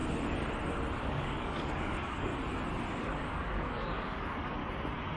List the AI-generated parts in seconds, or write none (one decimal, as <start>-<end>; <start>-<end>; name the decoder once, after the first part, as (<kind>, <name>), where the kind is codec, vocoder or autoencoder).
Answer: 1.0-2.3 (codec, DAC); 3.0-4.6